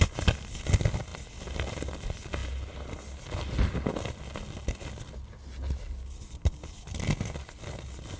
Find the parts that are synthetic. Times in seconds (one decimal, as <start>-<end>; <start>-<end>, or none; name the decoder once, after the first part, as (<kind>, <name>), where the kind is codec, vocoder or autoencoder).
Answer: none